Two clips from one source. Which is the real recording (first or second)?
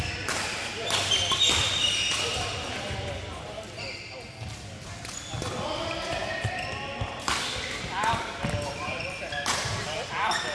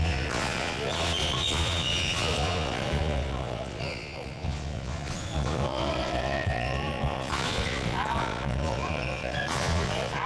first